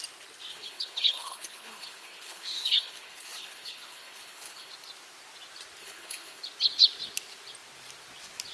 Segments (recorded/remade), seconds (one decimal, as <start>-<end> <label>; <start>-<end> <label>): 0.0-0.5 recorded; 0.5-4.7 remade; 4.7-5.8 recorded; 5.8-6.4 remade; 6.4-8.5 recorded